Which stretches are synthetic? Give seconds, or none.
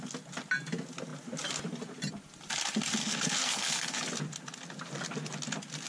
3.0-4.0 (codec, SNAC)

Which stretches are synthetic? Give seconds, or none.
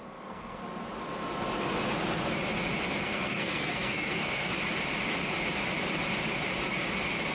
0.0-0.6 (codec, SNAC); 3.0-4.5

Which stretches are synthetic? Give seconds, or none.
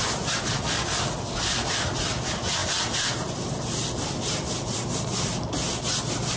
none